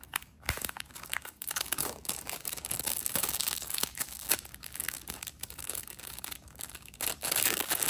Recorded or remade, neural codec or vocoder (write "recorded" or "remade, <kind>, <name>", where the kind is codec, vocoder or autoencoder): remade, codec, DAC